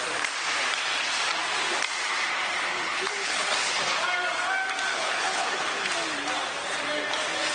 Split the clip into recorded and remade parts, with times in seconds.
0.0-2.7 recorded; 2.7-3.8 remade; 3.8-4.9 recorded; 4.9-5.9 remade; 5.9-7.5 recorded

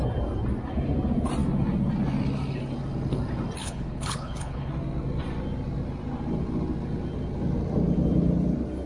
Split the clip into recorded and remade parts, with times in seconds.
0.0-3.6 recorded; 3.6-4.7 remade; 4.7-8.9 recorded

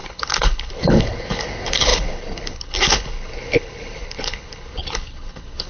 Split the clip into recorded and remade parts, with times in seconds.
0.0-5.7 remade

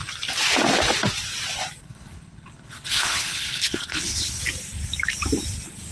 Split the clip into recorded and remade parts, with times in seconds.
0.0-1.8 recorded; 1.8-4.4 remade; 4.4-5.9 recorded

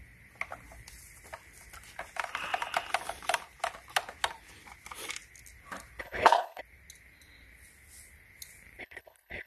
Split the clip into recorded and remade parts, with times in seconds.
0.0-6.0 recorded; 6.0-6.6 remade; 6.6-8.8 recorded; 8.8-9.5 remade